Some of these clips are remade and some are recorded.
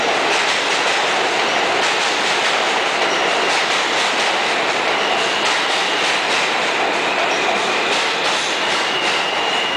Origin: recorded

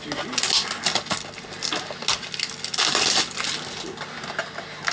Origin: recorded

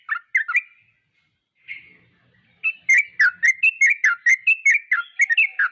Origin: recorded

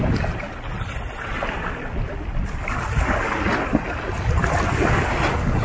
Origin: recorded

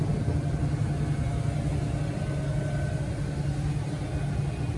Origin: recorded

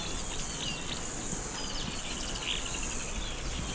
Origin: recorded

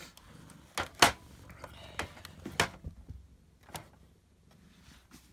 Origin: recorded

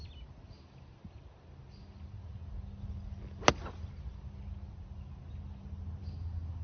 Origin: recorded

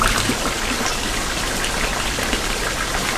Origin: recorded